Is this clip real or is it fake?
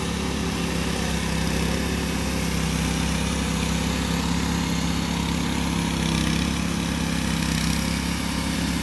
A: real